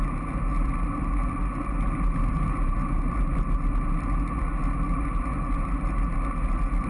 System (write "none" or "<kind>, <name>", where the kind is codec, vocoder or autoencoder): none